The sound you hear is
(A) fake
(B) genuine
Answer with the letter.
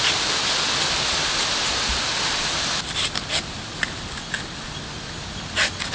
B